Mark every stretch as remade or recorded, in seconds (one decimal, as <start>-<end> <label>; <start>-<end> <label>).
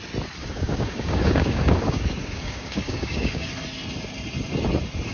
0.0-0.4 recorded; 0.4-3.5 remade; 3.5-5.1 recorded